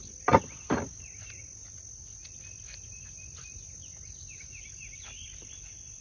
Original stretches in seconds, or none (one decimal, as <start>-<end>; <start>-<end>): 0.0-6.0